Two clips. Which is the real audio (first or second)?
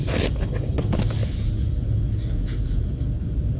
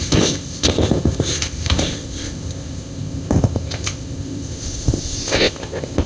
first